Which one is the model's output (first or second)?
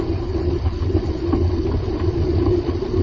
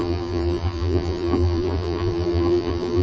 second